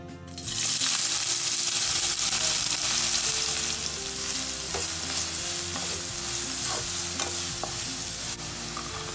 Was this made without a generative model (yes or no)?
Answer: yes